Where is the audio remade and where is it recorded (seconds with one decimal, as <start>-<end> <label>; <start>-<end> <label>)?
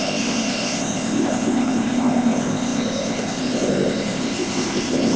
0.0-5.2 remade